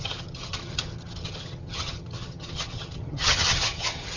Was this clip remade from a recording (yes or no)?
yes